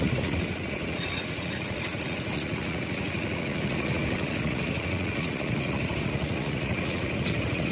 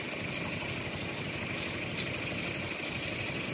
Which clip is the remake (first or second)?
first